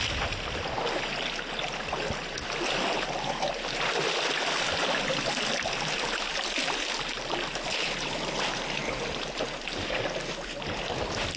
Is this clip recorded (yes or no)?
yes